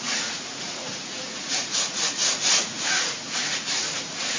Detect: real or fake fake